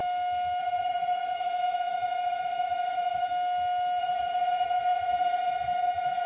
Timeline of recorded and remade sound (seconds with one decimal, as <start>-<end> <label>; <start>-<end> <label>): 0.0-0.6 recorded; 0.6-3.3 remade; 3.3-4.0 recorded; 4.0-6.3 remade